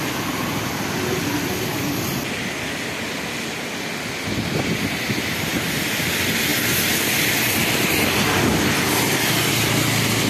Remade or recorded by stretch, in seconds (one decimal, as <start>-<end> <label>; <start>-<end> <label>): 0.0-10.3 recorded